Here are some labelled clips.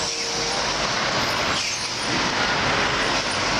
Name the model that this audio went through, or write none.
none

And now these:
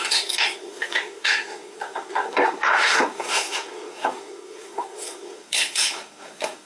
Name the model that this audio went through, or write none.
codec, SNAC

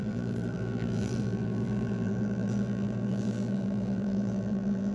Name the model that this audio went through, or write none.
vocoder, BigVGAN v2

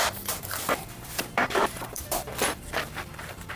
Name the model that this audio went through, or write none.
vocoder, BigVGAN v2